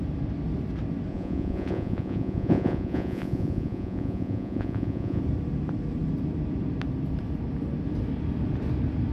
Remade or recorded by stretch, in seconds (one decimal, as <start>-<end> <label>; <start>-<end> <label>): 0.0-1.1 recorded; 1.1-5.2 remade; 5.2-9.1 recorded